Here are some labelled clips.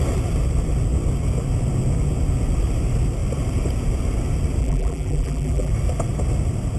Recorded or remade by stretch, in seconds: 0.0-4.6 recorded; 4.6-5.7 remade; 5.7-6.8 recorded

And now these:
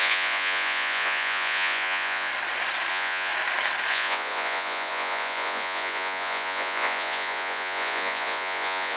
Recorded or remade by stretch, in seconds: 0.0-2.3 remade; 2.3-2.9 recorded; 2.9-3.3 remade; 3.3-3.9 recorded; 3.9-9.0 remade

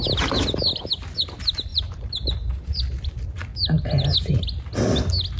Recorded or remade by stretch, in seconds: 0.0-1.7 recorded; 1.7-2.8 remade; 2.8-5.4 recorded

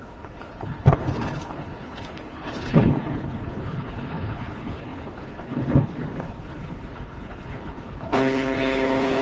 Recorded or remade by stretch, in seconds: 0.0-9.2 remade

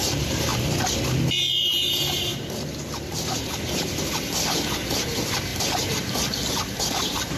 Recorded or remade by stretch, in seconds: 0.0-0.5 remade; 0.5-1.5 recorded; 1.5-2.3 remade; 2.3-3.1 recorded; 3.1-7.4 remade